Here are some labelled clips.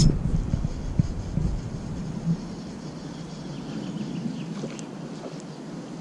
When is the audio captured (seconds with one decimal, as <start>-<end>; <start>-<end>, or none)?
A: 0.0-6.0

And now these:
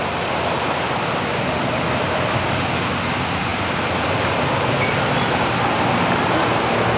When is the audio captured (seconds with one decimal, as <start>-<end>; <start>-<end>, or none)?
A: 0.0-7.0

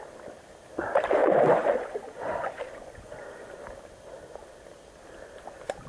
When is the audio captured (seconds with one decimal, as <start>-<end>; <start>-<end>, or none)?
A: 0.0-1.2; 3.5-5.9

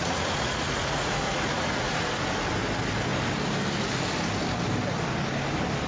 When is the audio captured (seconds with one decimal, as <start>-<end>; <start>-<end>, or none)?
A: 1.9-5.9